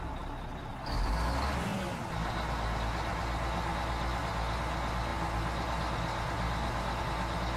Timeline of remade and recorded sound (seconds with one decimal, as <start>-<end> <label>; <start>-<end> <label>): 0.0-7.6 recorded